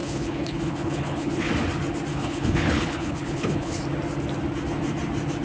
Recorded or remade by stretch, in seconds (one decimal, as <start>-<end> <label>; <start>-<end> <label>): 0.0-1.5 remade; 1.5-2.1 recorded; 2.1-3.8 remade; 3.8-5.4 recorded